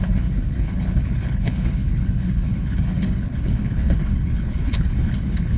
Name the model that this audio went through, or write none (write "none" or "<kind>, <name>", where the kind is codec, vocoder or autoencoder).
codec, HILCodec